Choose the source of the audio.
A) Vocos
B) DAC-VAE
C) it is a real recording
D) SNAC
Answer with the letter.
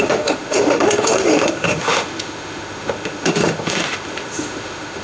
B